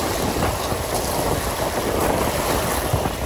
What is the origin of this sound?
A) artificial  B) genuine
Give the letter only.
B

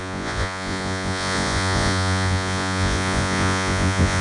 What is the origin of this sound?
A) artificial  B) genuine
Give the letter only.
A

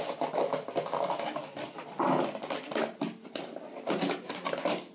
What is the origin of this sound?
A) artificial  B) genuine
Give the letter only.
B